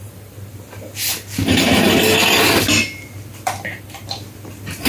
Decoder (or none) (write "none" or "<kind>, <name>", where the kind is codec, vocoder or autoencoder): vocoder, BigVGAN v2